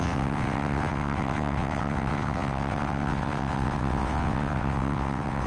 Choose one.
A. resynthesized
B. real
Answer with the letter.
A